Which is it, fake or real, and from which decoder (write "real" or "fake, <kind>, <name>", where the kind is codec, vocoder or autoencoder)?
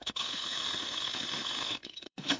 fake, autoencoder, DAC-VAE